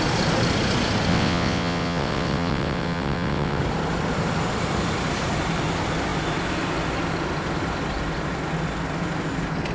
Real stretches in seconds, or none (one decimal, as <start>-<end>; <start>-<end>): 0.0-1.1; 3.6-9.7